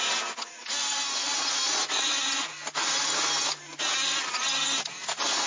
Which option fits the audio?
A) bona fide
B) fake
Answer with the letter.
A